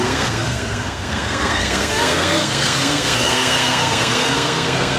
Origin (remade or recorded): remade